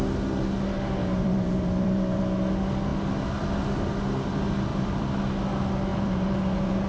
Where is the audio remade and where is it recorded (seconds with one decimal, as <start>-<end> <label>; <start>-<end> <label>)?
0.0-1.0 recorded; 1.0-2.2 remade; 2.2-4.7 recorded; 4.7-5.2 remade; 5.2-5.9 recorded; 5.9-6.9 remade